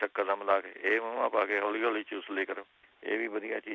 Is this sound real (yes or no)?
yes